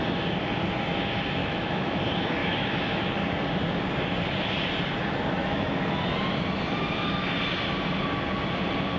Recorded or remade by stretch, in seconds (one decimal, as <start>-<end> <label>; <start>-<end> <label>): 0.0-1.4 recorded; 1.4-2.0 remade; 2.0-2.4 recorded; 2.4-3.1 remade; 3.1-5.4 recorded; 5.4-6.0 remade; 6.0-9.0 recorded